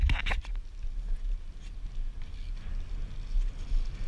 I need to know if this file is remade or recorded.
recorded